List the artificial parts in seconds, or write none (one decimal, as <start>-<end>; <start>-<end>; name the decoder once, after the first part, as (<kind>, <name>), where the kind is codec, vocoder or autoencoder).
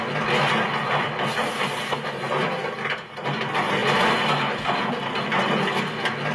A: none